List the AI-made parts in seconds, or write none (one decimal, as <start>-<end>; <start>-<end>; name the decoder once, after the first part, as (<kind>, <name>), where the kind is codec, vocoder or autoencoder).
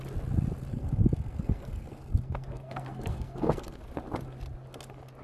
0.7-3.8 (codec, SNAC)